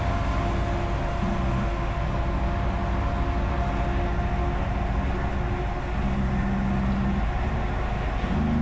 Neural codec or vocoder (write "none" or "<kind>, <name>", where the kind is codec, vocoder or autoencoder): none